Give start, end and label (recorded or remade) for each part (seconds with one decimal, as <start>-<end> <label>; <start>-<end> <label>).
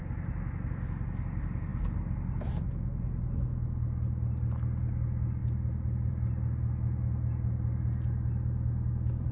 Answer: 0.0-9.3 recorded